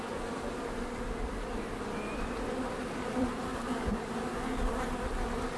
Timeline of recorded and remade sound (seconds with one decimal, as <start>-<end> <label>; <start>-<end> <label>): 0.0-3.5 recorded; 3.5-4.7 remade; 4.7-5.6 recorded